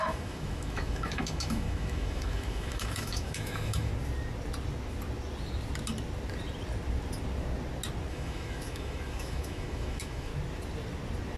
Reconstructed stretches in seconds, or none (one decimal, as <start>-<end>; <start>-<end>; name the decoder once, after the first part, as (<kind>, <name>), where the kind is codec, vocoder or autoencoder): 0.0-3.9 (autoencoder, DAC-VAE); 8.1-10.3